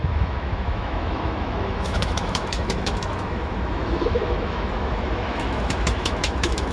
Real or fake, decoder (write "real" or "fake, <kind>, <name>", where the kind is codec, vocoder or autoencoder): fake, autoencoder, DAC-VAE